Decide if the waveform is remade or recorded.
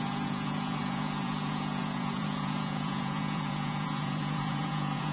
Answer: remade